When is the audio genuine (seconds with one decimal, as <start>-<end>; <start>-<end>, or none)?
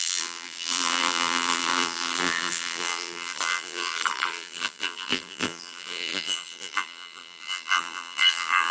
none